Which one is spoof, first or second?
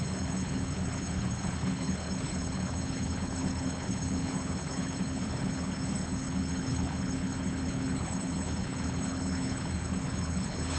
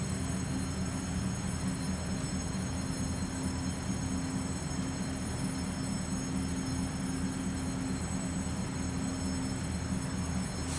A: first